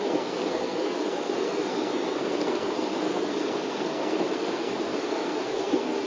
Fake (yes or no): yes